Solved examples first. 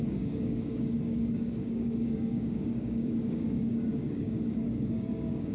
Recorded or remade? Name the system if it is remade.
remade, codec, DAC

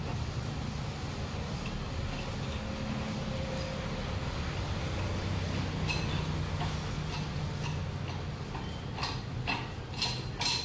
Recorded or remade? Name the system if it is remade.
recorded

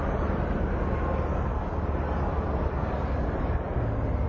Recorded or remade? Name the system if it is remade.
recorded